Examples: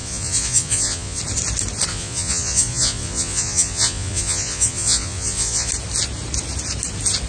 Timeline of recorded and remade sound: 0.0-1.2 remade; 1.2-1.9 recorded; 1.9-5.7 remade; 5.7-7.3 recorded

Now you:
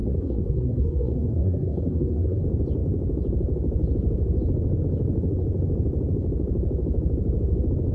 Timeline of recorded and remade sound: 0.0-2.4 remade; 2.4-7.9 recorded